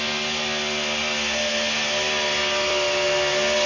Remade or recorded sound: recorded